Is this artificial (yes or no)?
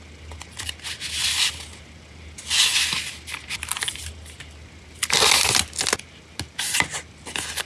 no